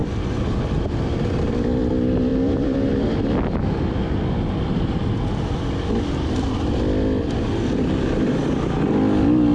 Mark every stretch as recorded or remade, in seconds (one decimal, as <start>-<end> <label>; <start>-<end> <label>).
0.0-9.5 recorded